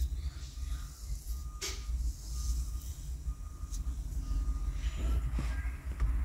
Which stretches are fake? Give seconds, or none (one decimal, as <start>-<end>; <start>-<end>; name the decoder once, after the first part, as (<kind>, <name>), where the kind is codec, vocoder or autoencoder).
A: none